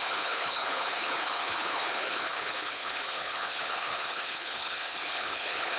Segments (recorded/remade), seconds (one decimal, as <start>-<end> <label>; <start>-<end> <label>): 0.0-5.8 remade